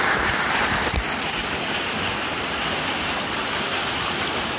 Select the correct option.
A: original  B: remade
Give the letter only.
A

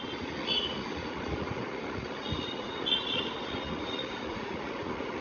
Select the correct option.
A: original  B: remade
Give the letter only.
B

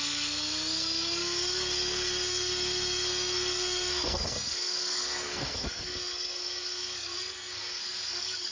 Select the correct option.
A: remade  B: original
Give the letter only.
A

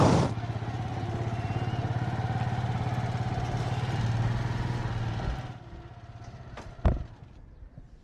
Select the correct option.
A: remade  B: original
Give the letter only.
B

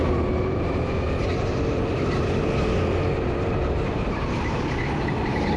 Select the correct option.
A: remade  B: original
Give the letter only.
A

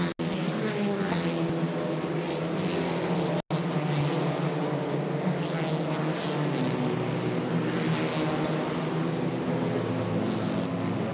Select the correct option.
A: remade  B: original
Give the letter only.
B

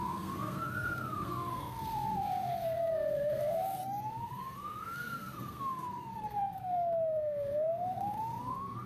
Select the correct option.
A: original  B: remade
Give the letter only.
B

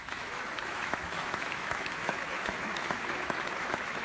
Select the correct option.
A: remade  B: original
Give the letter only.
A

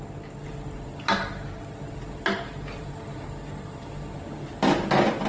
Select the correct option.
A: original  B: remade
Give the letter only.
A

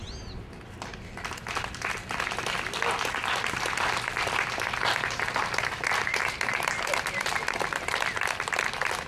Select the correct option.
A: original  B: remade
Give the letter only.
A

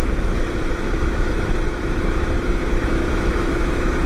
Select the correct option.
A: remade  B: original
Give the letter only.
A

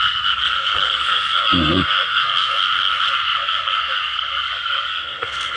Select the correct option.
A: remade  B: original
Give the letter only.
A